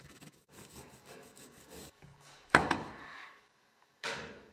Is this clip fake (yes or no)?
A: yes